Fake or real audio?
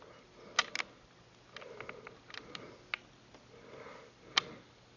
real